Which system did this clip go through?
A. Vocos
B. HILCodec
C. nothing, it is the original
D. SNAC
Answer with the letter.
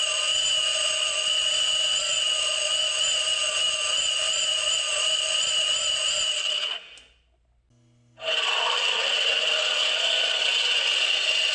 C